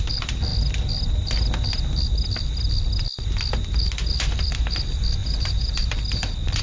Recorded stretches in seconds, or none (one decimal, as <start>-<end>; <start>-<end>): 0.0-5.2